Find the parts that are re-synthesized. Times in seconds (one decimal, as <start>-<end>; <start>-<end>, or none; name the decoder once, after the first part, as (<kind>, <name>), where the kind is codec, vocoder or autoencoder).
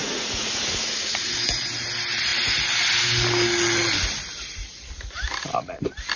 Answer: 0.0-1.3 (vocoder, Vocos)